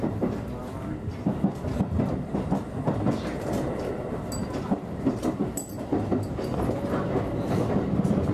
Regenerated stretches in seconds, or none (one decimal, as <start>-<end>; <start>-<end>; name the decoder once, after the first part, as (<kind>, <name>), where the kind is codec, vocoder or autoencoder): 4.4-5.2 (vocoder, BigVGAN v2)